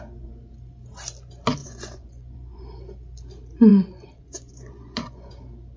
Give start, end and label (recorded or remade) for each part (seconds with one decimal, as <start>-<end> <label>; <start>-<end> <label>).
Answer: 0.0-1.6 recorded; 1.6-2.6 remade; 2.6-3.7 recorded; 3.7-5.3 remade; 5.3-5.8 recorded